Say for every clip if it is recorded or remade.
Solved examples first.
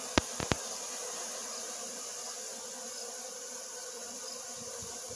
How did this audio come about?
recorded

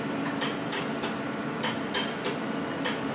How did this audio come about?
recorded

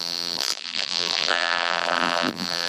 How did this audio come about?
remade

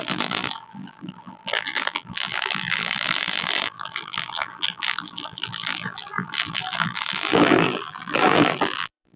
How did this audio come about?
remade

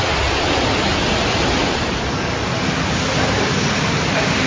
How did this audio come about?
recorded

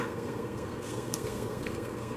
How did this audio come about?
remade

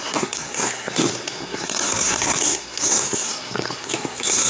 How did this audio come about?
remade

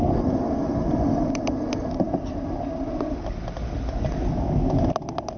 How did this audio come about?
recorded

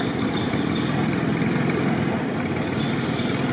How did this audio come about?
remade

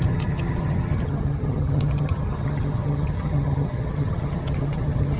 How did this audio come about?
remade